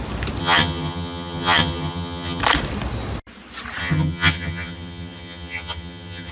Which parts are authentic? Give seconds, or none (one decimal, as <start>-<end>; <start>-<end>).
0.0-0.4; 2.4-3.8